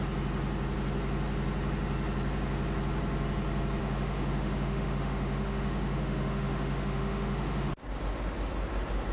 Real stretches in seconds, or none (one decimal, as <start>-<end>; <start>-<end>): 0.0-3.8; 7.7-9.1